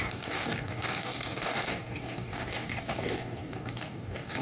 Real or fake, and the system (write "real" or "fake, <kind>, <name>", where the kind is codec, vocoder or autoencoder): fake, codec, DAC